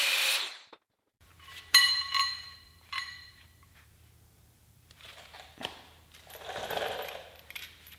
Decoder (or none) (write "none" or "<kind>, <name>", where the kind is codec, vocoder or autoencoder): vocoder, BigVGAN v2